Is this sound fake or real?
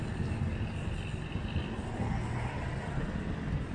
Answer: real